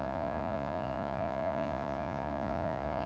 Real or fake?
fake